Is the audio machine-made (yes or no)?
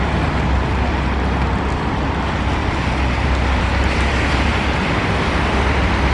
yes